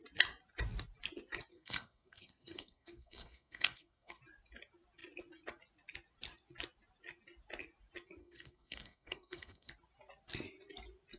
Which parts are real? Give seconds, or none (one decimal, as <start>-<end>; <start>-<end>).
0.0-1.5; 4.2-8.2; 9.7-11.2